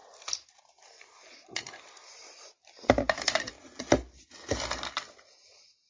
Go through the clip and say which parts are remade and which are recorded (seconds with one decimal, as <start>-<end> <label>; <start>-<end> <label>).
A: 0.0-5.9 recorded